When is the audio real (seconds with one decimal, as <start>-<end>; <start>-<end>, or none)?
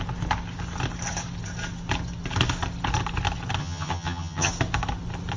0.0-3.6; 4.5-5.4